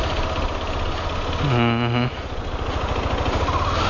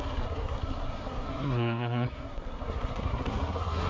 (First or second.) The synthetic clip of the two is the second